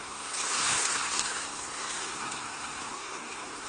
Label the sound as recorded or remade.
remade